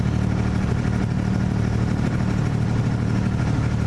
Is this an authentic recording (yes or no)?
yes